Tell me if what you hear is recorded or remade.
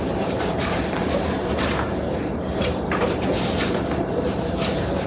remade